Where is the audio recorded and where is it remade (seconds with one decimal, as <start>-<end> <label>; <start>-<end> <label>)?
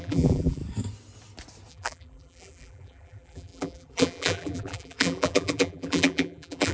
0.0-0.6 remade; 0.6-1.7 recorded; 1.7-6.7 remade